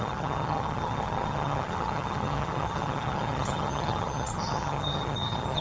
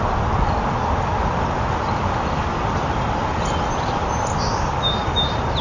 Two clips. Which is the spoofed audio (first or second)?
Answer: first